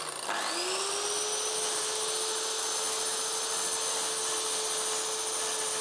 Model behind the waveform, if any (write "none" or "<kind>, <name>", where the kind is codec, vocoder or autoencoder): none